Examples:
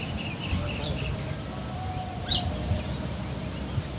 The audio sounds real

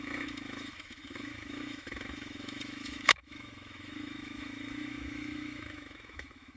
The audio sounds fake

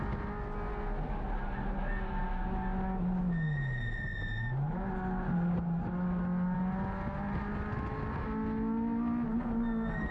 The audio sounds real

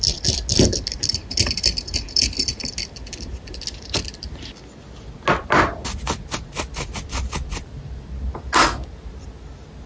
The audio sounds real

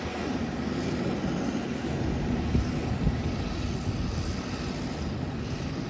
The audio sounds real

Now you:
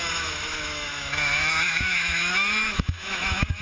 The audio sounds fake